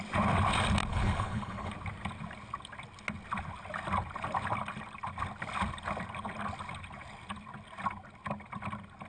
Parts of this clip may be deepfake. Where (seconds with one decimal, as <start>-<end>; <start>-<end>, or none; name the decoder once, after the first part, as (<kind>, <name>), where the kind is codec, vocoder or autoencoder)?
0.9-1.7 (codec, HILCodec)